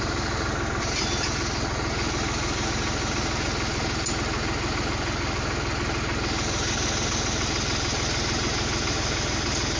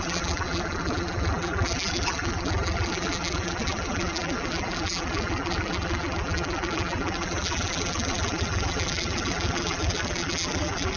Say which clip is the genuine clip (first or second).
first